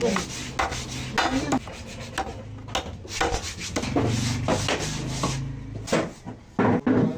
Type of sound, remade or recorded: recorded